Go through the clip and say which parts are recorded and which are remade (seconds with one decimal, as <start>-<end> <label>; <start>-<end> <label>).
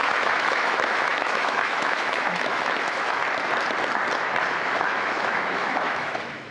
0.0-3.2 remade; 3.2-4.5 recorded; 4.5-6.5 remade